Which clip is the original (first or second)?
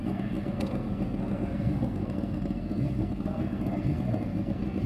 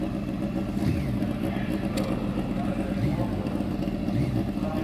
second